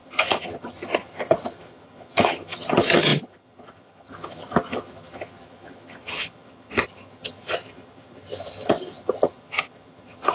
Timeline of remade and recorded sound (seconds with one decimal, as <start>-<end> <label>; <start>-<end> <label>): 0.0-10.3 remade